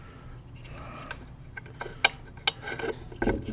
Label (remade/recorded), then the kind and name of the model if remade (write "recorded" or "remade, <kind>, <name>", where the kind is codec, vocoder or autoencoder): recorded